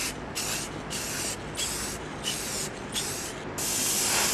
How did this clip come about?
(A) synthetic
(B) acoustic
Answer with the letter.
B